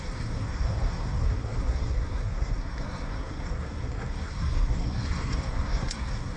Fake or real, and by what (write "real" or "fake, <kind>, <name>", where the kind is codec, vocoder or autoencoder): fake, codec, SNAC